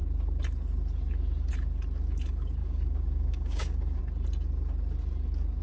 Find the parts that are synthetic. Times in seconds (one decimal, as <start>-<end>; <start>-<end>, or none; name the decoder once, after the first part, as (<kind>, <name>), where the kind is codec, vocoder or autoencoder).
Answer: 2.6-4.0 (codec, DAC)